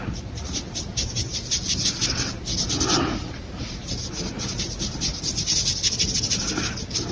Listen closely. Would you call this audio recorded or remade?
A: recorded